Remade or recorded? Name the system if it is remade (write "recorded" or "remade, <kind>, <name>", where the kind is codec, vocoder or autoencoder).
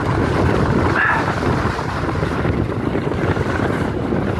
recorded